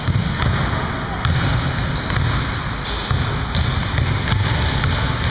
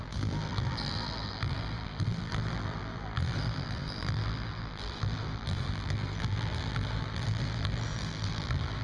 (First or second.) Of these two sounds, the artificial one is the second